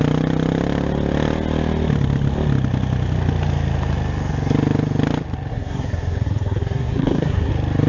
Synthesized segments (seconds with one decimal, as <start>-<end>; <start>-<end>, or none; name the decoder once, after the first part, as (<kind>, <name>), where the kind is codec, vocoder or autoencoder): 5.5-7.5 (codec, SNAC)

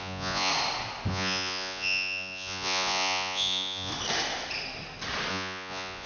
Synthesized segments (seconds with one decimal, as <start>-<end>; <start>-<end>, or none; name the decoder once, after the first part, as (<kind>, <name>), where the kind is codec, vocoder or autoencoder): 0.0-0.5 (vocoder, Vocos); 1.1-3.9; 5.3-6.1

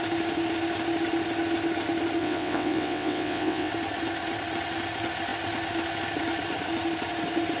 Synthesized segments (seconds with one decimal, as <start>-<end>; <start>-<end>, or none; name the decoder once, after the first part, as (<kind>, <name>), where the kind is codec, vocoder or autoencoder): 2.2-3.7 (vocoder, WaveNeXt)

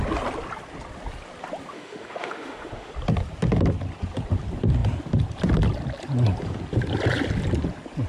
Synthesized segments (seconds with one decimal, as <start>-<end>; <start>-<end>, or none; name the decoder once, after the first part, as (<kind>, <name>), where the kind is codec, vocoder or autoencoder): 1.7-2.9 (autoencoder, DAC-VAE)

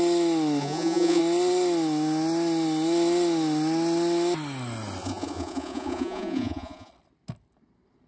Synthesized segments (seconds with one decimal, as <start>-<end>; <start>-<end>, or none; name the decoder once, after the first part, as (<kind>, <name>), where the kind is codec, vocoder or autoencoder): 0.6-1.2 (vocoder, Vocos); 5.0-6.9

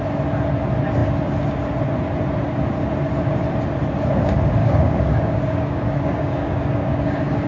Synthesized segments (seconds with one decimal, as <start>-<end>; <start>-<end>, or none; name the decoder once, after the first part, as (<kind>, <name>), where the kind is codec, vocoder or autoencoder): 4.6-7.5 (codec, DAC)

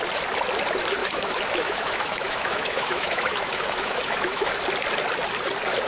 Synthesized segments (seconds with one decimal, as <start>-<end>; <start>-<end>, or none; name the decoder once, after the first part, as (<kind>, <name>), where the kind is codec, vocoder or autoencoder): 1.0-4.5 (autoencoder, DAC-VAE)

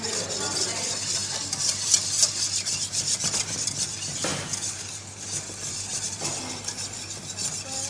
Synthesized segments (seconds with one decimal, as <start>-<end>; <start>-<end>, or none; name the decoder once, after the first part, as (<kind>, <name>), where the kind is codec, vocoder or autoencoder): none